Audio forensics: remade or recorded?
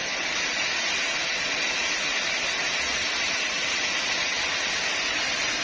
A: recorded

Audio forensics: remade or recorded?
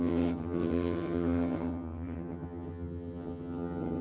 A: remade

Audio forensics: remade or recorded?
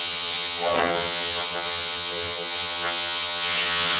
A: remade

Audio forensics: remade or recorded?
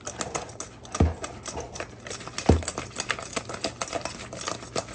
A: recorded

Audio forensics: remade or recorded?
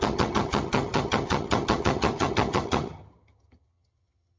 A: remade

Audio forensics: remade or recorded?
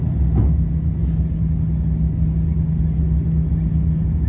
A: recorded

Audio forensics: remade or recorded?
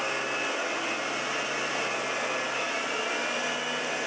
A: recorded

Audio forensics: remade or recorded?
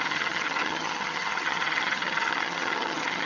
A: remade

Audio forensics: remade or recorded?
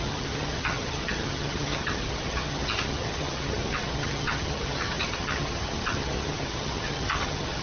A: remade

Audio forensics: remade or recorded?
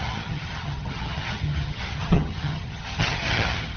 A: remade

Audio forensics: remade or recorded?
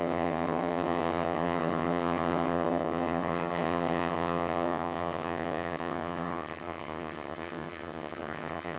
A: remade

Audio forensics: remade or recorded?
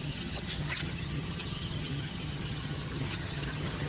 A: remade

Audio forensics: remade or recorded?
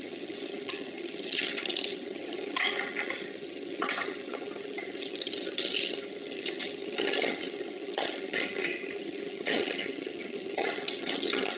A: remade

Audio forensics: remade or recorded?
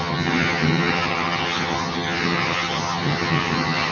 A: remade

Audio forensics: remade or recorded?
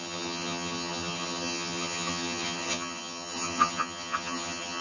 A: remade